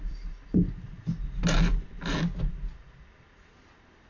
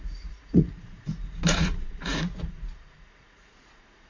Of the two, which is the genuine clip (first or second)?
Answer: first